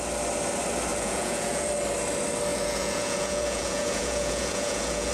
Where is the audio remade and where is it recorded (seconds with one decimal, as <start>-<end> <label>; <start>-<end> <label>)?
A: 0.0-0.9 recorded; 0.9-1.7 remade; 1.7-2.5 recorded; 2.5-5.1 remade